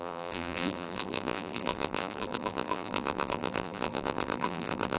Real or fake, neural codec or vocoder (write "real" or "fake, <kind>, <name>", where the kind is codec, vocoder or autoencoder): fake, vocoder, BigVGAN v2